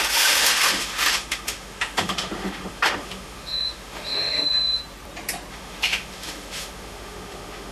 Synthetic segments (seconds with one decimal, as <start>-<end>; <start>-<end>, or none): 0.0-4.8; 5.5-7.7